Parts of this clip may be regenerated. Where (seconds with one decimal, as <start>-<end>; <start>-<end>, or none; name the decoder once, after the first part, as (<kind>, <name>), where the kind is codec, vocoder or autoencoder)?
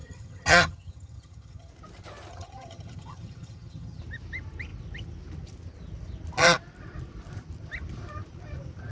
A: 0.0-1.7 (vocoder, HiFi-GAN); 2.3-4.0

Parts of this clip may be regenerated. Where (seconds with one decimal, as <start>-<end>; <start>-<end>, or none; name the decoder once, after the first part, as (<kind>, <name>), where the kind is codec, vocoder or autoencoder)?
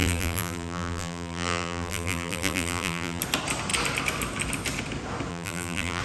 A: 0.0-3.2 (vocoder, BigVGAN v2); 5.3-6.0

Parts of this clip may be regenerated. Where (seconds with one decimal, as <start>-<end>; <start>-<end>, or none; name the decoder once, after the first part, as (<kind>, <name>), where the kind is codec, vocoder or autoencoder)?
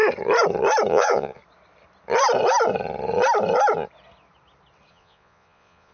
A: 0.9-1.4 (vocoder, Vocos); 4.9-5.9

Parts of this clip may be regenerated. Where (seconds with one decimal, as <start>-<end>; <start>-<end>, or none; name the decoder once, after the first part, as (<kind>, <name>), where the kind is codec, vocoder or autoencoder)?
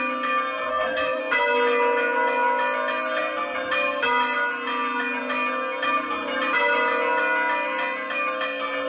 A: 0.7-1.2 (codec, SNAC)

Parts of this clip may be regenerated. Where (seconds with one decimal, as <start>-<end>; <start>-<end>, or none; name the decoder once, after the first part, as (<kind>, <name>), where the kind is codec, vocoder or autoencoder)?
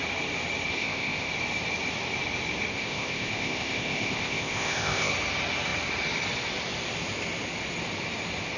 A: 0.7-1.3 (codec, ZipCodec); 2.7-5.1